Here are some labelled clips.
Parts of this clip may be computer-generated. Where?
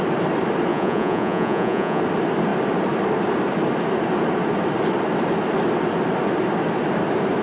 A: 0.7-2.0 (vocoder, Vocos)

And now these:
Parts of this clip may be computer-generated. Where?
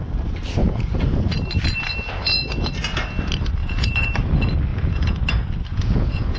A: 0.6-1.2 (vocoder, Vocos); 3.6-4.1; 4.7-5.2; 5.7-6.4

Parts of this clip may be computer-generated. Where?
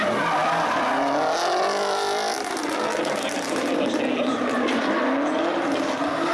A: none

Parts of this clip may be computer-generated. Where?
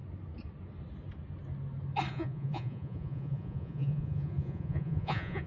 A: 2.1-5.5 (vocoder, Vocos)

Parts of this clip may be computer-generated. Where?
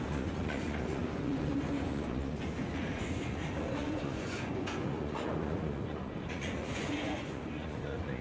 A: 0.0-8.2 (vocoder, Vocos)